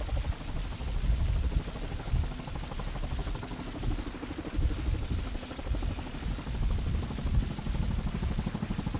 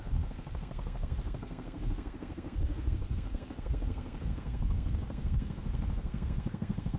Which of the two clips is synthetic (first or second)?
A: second